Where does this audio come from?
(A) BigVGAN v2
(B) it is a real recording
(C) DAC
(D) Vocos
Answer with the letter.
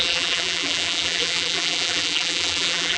A